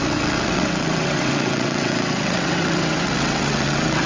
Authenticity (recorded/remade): remade